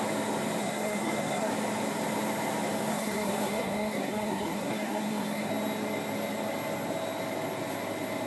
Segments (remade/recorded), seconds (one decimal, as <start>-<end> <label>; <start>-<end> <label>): 0.0-0.6 recorded; 0.6-1.5 remade; 1.5-2.9 recorded; 2.9-5.5 remade; 5.5-8.3 recorded